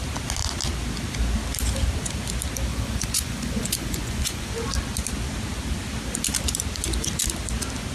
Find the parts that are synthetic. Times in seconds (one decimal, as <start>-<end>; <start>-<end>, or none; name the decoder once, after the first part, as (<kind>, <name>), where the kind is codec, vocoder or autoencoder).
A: 2.7-4.5 (vocoder, Vocos)